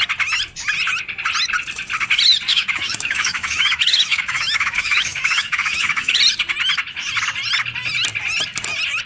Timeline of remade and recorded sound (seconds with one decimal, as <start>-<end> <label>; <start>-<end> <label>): 0.0-2.5 recorded; 2.5-6.2 remade; 6.2-9.1 recorded